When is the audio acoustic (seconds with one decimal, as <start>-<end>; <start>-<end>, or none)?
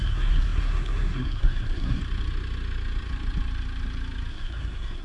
2.0-4.3